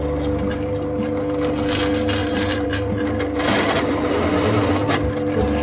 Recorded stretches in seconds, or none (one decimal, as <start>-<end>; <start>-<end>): 0.0-2.2; 3.0-5.6